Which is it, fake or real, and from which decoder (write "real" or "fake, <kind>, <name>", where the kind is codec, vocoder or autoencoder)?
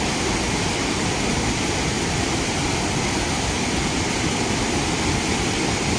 real